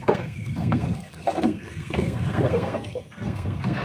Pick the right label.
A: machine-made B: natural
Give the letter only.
A